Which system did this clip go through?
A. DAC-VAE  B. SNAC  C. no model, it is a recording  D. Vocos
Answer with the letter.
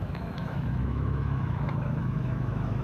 A